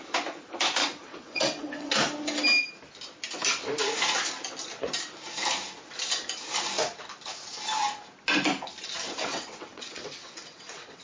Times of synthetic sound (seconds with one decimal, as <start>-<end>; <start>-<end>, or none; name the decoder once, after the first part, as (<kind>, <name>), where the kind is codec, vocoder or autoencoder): 0.8-1.9 (vocoder, WaveNeXt); 9.3-11.0